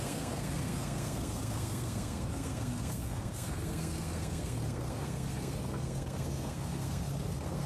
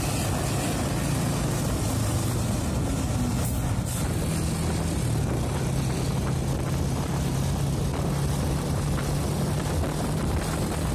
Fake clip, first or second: first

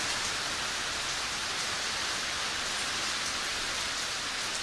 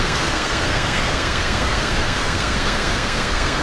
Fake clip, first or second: second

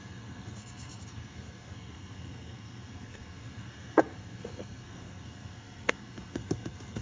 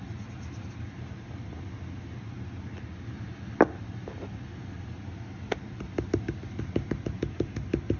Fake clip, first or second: first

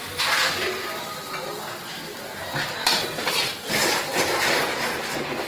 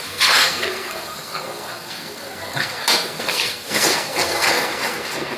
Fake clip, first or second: second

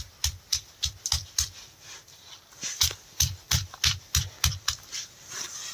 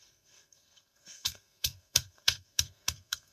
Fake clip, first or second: second